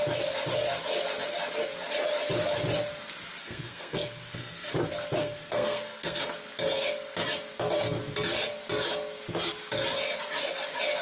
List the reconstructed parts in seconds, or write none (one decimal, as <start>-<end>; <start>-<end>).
3.4-4.7; 5.2-6.2